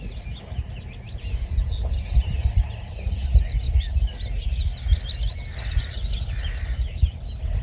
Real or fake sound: real